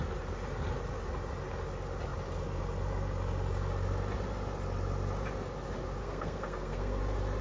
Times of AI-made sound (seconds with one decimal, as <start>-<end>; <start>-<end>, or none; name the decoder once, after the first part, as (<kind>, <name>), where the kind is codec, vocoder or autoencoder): 6.0-7.0 (codec, SNAC)